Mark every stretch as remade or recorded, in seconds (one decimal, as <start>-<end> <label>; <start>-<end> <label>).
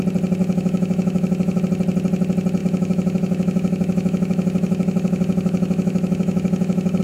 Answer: 0.0-0.4 recorded; 0.4-1.6 remade; 1.6-2.6 recorded; 2.6-7.0 remade